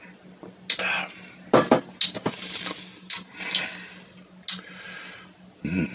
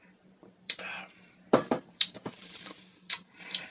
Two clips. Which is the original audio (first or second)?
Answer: first